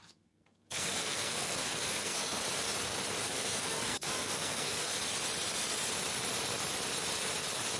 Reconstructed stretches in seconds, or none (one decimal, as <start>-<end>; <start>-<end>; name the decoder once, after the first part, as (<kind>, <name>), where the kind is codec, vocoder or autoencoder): 0.0-2.4 (codec, SNAC); 3.2-4.9

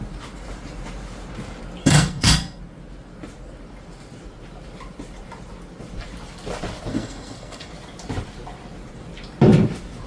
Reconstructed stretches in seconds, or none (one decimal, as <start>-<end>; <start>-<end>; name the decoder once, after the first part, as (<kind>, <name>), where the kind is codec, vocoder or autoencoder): 1.8-2.6 (codec, SNAC); 6.9-7.7

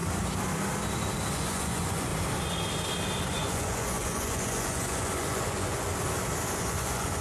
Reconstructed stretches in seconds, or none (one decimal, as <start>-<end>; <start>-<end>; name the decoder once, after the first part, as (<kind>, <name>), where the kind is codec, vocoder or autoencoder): 1.3-2.1 (vocoder, Vocos); 3.2-5.9; 6.6-7.2